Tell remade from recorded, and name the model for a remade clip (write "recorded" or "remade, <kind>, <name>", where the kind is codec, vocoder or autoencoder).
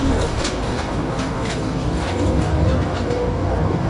remade, codec, DAC